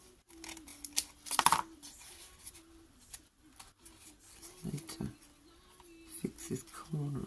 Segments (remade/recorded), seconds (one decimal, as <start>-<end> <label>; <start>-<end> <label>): 0.0-7.3 recorded